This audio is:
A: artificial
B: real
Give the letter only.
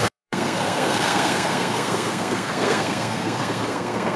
A